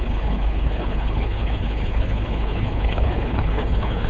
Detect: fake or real fake